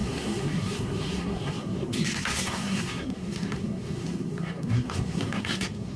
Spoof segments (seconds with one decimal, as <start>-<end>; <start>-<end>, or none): 0.0-6.0